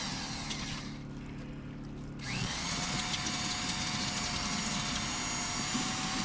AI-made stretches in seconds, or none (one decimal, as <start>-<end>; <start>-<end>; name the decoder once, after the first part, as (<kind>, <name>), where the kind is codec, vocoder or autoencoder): 2.4-3.0 (vocoder, Vocos)